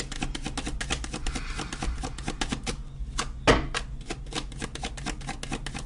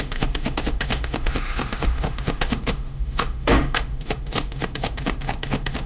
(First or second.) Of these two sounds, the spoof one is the second